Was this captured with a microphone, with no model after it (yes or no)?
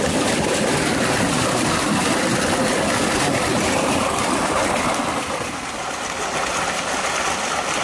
yes